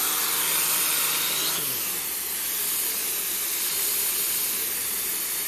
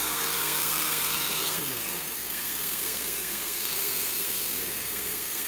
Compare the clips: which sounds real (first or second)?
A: first